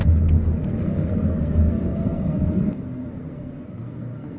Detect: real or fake fake